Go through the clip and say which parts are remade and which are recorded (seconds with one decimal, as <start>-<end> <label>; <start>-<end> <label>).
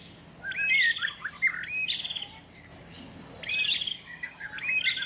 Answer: 0.0-3.9 recorded; 3.9-4.5 remade; 4.5-5.1 recorded